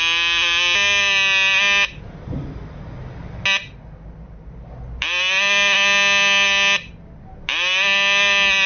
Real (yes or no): yes